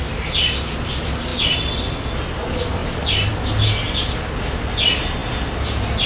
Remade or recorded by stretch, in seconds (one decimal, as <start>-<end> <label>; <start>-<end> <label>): 0.0-6.1 recorded